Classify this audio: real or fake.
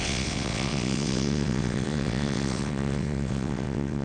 fake